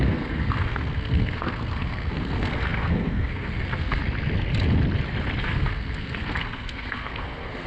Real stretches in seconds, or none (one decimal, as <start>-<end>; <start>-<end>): 4.0-5.4